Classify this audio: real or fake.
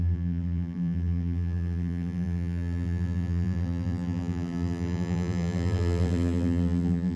fake